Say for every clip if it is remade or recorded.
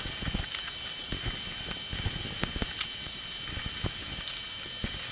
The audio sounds recorded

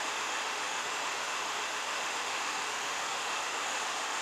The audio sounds remade